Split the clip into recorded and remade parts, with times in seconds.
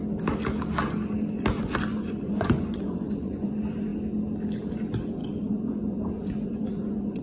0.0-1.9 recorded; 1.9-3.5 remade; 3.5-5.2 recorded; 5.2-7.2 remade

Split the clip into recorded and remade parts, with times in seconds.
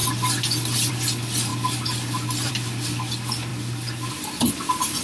0.0-5.0 recorded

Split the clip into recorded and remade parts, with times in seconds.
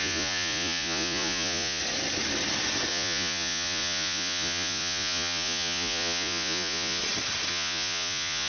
0.0-1.8 remade; 1.8-2.9 recorded; 2.9-7.0 remade; 7.0-7.5 recorded; 7.5-8.5 remade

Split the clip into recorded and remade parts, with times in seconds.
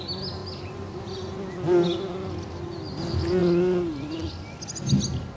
0.0-5.4 recorded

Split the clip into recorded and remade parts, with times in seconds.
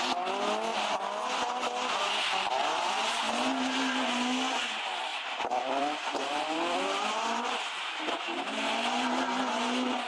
0.0-5.1 recorded; 5.1-7.0 remade; 7.0-10.1 recorded